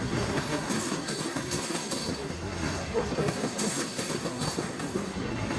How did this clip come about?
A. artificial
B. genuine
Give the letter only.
A